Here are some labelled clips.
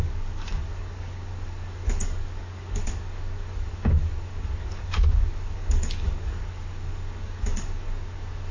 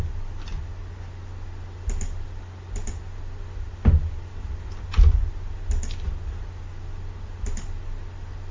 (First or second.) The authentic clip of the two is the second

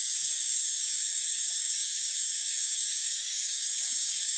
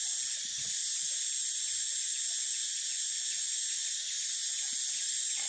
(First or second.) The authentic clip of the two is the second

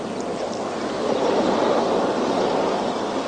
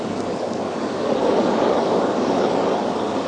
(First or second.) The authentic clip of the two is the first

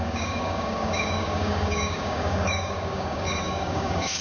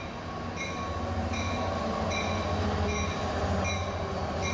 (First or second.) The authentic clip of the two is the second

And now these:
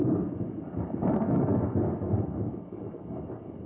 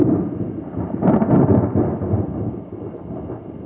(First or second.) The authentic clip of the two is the second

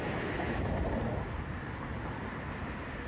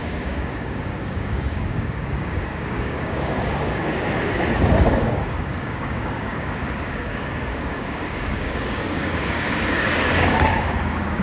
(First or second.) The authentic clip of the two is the first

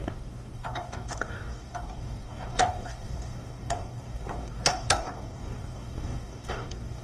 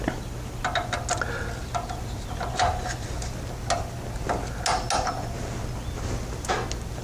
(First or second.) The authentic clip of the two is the second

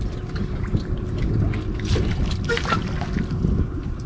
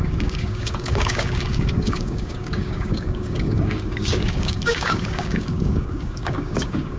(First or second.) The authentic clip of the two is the first